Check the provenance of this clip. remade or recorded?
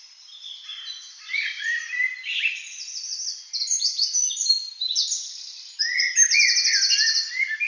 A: recorded